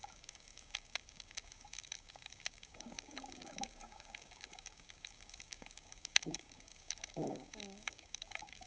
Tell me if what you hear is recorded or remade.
remade